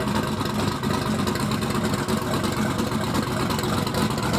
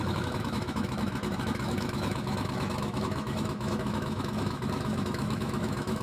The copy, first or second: second